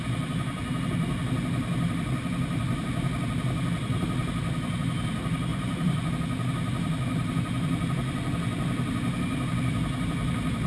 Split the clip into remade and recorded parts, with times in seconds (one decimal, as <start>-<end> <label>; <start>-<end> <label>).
0.0-5.5 recorded; 5.5-6.1 remade; 6.1-10.7 recorded